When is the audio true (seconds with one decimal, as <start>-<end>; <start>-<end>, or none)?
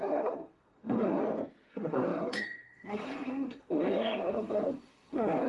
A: 1.2-1.7